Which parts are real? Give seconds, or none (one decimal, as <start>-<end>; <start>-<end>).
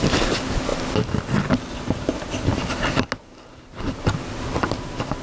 0.0-5.2